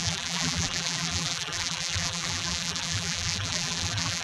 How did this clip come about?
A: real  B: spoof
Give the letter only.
B